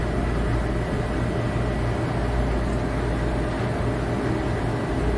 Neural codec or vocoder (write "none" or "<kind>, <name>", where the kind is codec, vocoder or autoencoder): none